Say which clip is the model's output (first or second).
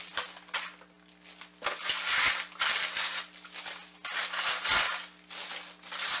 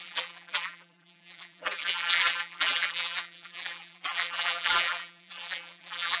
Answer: second